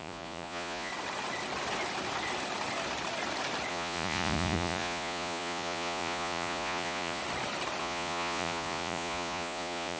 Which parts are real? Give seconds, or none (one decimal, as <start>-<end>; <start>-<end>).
0.9-3.7; 7.2-7.8